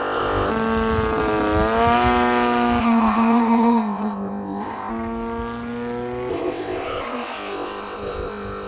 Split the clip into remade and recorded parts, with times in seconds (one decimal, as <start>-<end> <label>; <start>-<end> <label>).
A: 0.0-0.5 remade; 0.5-2.8 recorded; 2.8-4.9 remade; 4.9-6.3 recorded; 6.3-8.7 remade